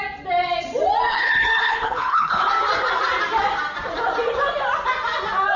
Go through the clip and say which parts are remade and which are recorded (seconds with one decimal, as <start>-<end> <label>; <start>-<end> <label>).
0.0-1.1 recorded; 1.1-2.5 remade; 2.5-5.6 recorded